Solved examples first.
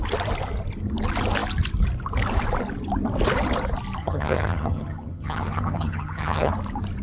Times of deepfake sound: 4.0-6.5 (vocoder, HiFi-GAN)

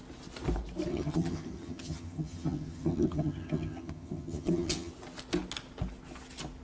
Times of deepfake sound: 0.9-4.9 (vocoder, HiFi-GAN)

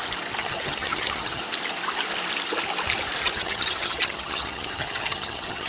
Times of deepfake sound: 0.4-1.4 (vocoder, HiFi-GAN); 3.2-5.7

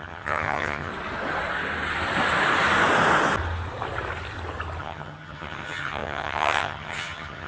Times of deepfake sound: 0.0-0.9 (vocoder, HiFi-GAN); 4.8-7.5

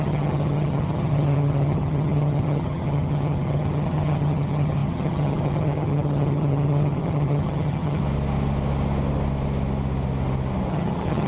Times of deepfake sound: 0.0-8.0 (vocoder, HiFi-GAN); 10.7-11.3